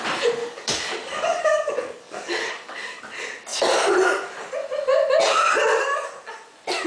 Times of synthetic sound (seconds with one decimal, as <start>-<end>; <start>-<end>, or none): 0.4-3.0